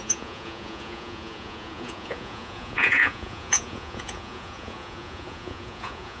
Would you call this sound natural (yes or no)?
no